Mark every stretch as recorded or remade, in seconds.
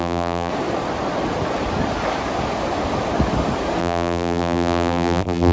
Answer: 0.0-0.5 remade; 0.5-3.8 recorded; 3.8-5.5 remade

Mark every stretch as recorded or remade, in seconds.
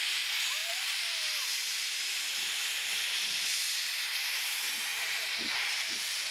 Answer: 0.0-0.6 recorded; 0.6-1.3 remade; 1.3-6.3 recorded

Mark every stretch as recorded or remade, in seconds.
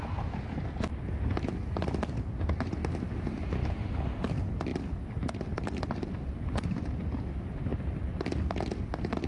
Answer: 0.0-4.7 recorded; 4.7-6.8 remade; 6.8-9.3 recorded